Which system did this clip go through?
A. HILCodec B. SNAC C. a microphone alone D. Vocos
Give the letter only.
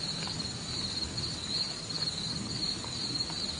C